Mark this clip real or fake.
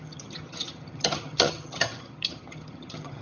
fake